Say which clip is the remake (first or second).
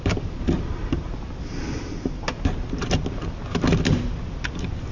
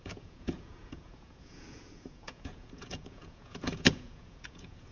second